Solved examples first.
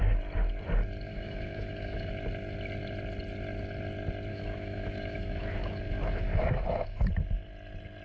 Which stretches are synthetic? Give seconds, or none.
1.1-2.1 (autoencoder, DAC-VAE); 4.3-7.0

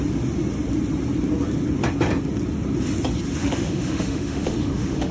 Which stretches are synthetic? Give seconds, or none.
3.4-5.1 (autoencoder, DAC-VAE)

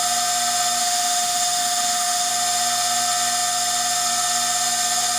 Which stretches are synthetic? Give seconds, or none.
0.8-2.3 (autoencoder, DAC-VAE)

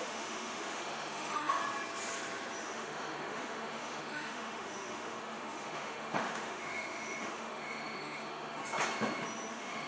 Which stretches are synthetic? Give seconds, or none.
0.0-1.6 (autoencoder, DAC-VAE); 2.6-8.6; 9.5-9.9